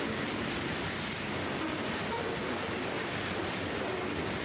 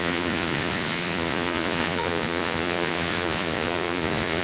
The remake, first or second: second